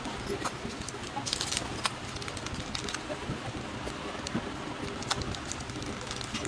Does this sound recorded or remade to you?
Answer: recorded